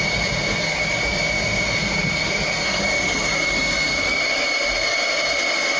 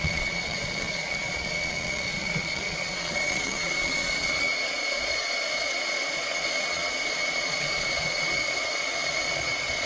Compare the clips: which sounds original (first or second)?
first